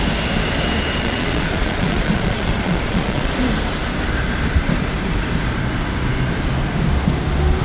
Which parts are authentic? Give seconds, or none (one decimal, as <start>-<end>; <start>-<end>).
0.0-1.0; 3.3-7.6